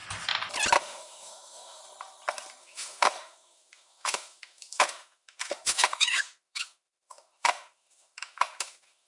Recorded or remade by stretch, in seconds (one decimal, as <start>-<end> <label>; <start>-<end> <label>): 0.0-0.8 recorded; 0.8-1.8 remade; 1.8-2.6 recorded; 2.6-9.1 remade